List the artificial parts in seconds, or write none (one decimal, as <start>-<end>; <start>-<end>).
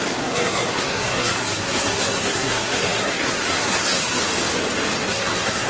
0.0-4.2; 5.1-5.7